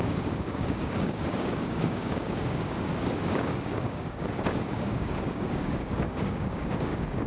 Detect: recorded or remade remade